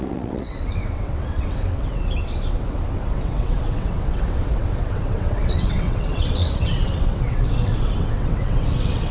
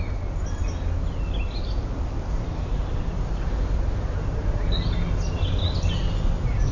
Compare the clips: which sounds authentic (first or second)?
second